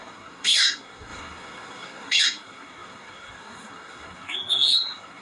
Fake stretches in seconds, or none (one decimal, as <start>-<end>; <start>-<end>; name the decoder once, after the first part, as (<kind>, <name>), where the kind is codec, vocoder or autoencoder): 0.0-5.2 (codec, SNAC)